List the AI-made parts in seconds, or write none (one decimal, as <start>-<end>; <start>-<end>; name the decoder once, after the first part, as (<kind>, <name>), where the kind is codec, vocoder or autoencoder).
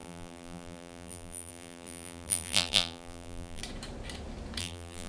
0.0-3.6 (vocoder, BigVGAN v2); 4.6-5.1